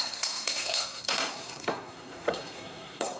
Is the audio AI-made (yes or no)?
yes